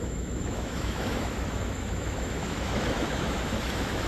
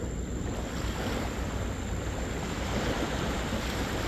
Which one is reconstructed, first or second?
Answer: first